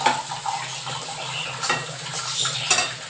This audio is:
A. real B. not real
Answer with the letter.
A